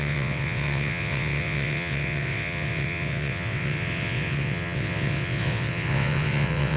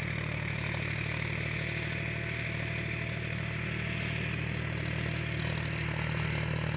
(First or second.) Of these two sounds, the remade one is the first